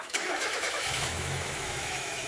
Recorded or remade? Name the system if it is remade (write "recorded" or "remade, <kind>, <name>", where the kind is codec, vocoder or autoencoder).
remade, autoencoder, DAC-VAE